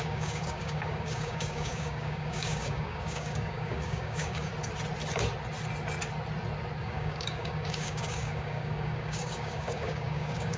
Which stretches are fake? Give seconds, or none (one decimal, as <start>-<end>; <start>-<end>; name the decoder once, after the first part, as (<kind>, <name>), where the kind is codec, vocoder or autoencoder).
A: 0.0-4.5 (codec, DAC); 6.8-10.6